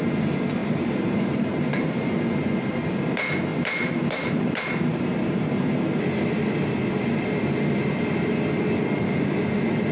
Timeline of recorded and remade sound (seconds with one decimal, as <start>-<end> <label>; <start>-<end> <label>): 0.0-0.6 recorded; 0.6-1.8 remade; 1.8-3.5 recorded; 3.5-5.7 remade; 5.7-9.9 recorded